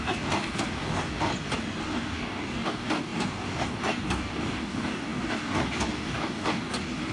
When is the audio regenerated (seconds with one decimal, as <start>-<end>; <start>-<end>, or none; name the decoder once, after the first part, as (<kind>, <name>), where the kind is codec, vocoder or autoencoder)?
0.0-1.3 (codec, DAC); 1.8-7.1